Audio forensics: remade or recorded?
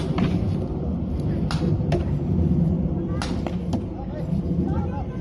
recorded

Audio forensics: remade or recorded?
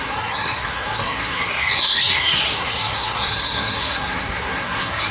remade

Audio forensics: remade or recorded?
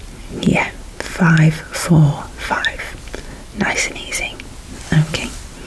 recorded